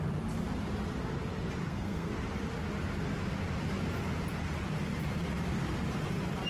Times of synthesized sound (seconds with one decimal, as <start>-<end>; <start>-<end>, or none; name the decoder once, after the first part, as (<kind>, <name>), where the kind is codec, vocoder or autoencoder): 1.6-2.1 (codec, SNAC)